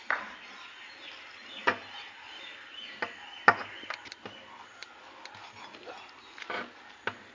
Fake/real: real